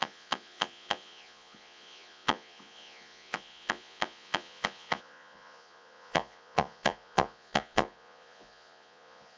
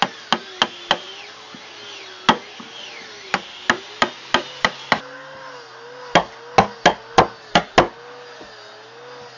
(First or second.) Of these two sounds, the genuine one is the second